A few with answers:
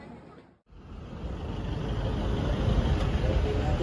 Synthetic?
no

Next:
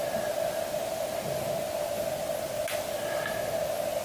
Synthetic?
no